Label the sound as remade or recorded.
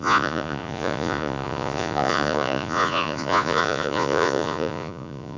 remade